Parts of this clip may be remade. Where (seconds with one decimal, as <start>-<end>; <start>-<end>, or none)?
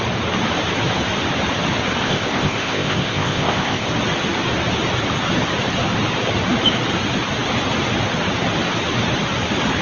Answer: 2.0-3.9